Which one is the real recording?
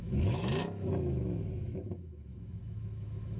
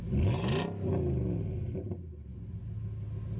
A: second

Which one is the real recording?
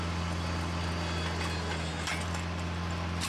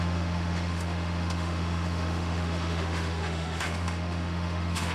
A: first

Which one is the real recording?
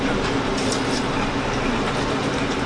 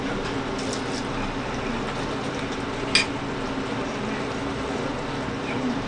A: second